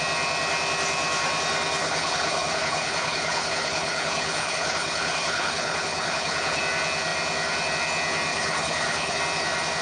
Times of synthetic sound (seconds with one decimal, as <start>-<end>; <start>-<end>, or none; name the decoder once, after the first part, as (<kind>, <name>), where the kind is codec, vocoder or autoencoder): 1.8-6.6 (codec, HILCodec); 8.3-9.2